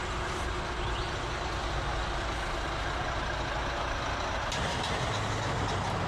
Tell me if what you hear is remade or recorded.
recorded